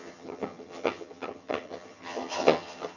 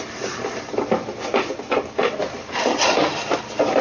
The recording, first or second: second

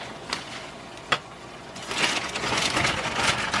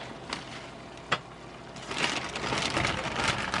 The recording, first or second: second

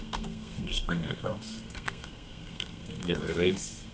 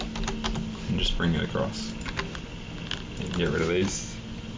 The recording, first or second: second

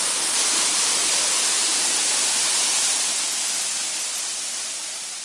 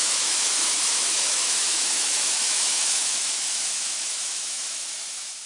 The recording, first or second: first